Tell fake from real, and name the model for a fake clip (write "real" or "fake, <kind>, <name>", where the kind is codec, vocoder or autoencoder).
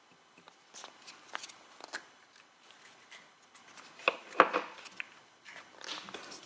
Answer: real